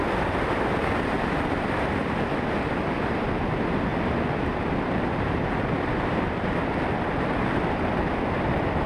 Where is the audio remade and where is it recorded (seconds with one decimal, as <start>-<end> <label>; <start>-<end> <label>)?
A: 0.0-3.9 remade; 3.9-7.2 recorded; 7.2-8.9 remade